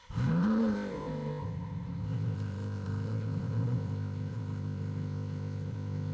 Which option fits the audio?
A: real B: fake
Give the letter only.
B